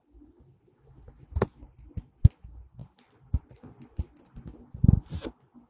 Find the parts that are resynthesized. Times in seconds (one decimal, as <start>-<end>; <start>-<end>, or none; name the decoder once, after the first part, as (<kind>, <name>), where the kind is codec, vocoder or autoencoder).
none